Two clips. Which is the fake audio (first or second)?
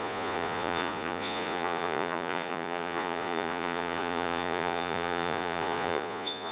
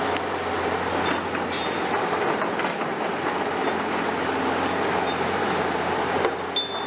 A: first